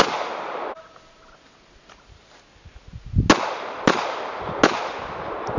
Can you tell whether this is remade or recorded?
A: recorded